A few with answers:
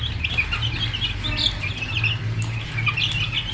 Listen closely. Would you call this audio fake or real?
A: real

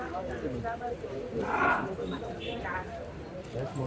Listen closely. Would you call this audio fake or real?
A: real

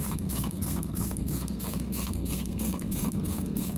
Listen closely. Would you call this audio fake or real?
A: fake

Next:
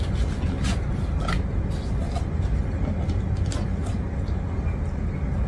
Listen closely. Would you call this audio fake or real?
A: real